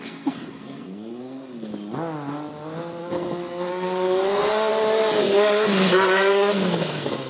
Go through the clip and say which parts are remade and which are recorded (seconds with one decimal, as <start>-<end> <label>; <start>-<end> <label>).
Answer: 0.0-1.7 remade; 1.7-3.0 recorded; 3.0-4.7 remade; 4.7-5.2 recorded; 5.2-7.3 remade